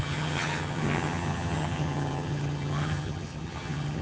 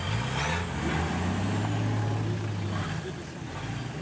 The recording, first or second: second